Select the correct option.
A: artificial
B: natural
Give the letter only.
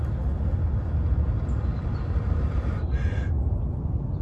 B